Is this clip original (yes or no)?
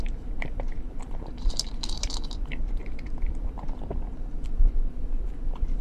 no